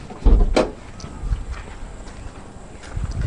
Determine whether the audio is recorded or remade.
recorded